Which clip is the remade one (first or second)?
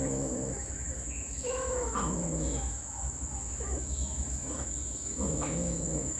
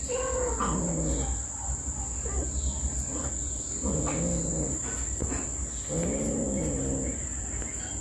first